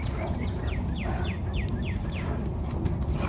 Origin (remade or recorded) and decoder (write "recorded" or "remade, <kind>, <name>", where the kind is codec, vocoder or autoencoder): recorded